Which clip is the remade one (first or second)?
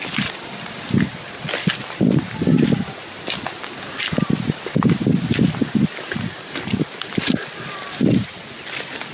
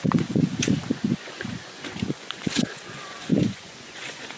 second